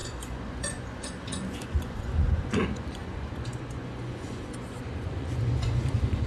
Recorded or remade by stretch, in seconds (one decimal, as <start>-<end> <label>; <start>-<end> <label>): 0.0-6.3 remade